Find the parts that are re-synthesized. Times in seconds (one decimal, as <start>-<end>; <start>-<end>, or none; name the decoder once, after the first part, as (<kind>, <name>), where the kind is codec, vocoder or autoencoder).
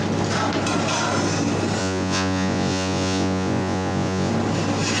1.8-4.3 (vocoder, Vocos)